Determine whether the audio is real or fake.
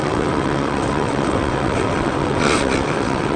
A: fake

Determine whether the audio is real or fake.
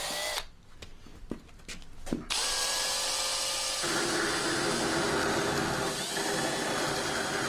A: real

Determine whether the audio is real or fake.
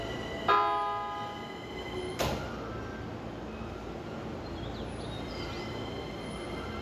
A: real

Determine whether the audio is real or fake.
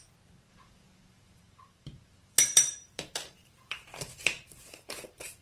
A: fake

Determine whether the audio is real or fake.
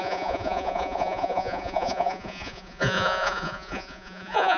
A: fake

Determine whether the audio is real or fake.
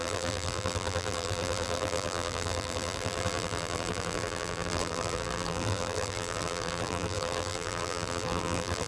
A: fake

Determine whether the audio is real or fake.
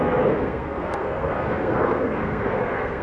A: fake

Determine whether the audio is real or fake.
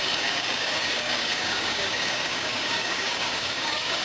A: fake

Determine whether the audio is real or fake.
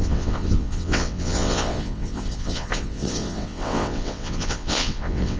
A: fake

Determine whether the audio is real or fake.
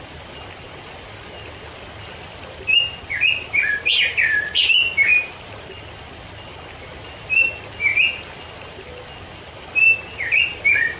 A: real